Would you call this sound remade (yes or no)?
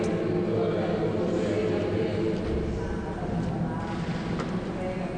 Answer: no